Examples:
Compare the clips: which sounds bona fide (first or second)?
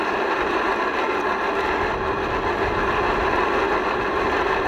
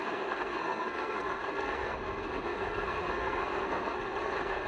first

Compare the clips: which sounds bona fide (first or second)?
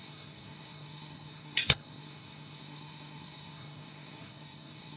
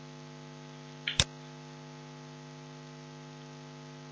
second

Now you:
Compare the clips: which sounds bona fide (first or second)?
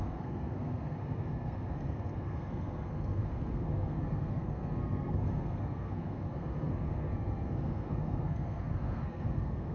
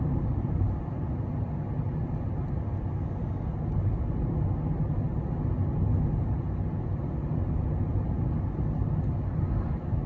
second